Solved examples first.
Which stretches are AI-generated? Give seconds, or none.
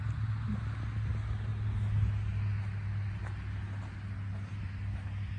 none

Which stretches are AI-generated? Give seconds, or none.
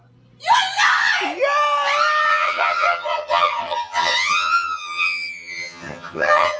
2.3-6.6 (vocoder, HiFi-GAN)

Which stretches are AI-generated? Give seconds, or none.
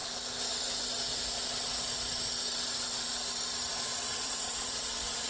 3.9-5.3 (vocoder, WaveNeXt)